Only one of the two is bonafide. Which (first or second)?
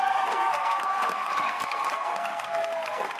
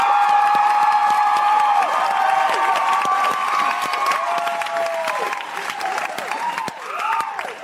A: second